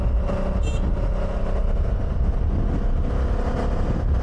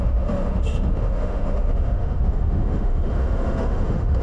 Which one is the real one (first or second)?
first